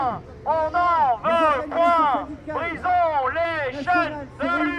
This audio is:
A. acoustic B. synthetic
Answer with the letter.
A